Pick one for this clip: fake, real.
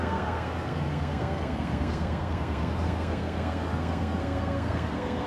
fake